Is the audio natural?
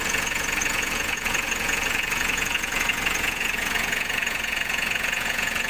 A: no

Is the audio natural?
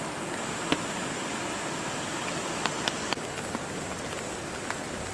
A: yes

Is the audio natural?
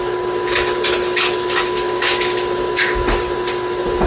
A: yes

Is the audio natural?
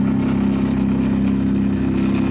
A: yes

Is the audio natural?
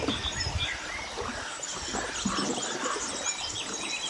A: yes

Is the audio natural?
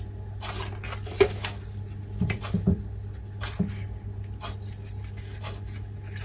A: yes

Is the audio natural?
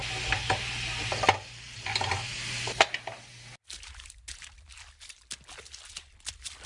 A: yes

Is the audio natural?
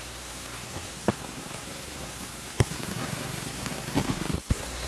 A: no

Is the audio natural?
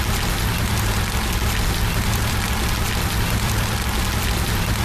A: no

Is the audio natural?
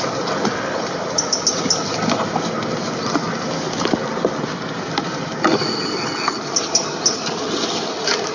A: yes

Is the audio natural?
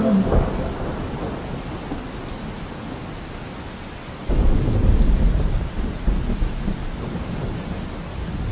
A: yes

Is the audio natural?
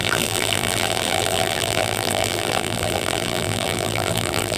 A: no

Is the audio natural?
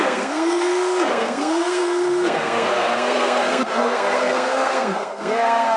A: no